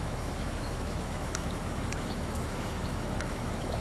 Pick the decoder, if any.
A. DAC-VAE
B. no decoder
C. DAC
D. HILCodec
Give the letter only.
A